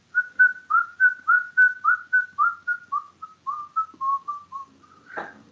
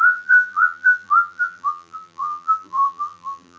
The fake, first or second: second